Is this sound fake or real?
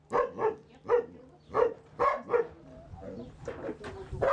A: real